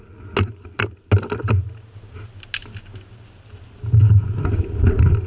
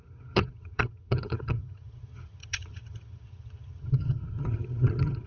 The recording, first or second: first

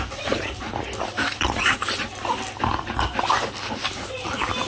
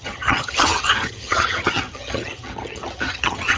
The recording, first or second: first